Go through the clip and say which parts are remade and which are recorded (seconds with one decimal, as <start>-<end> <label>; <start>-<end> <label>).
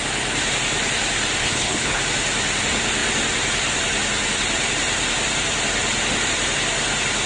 0.0-1.4 recorded; 1.4-2.0 remade; 2.0-7.3 recorded